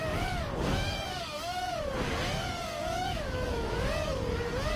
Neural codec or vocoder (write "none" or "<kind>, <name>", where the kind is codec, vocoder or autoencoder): codec, DAC